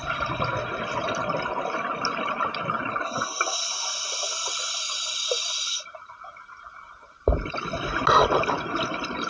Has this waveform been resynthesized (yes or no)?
no